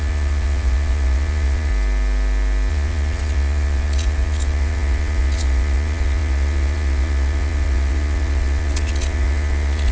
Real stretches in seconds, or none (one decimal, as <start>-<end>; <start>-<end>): 1.7-2.7